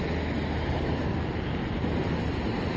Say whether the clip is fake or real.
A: real